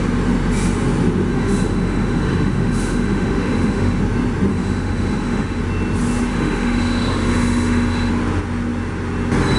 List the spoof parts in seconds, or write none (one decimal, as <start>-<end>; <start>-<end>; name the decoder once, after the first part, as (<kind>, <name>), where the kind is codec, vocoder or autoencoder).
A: 1.3-4.0 (autoencoder, DAC-VAE); 4.5-5.6; 6.3-8.1